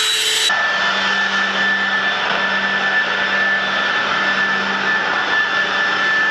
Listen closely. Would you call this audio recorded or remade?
recorded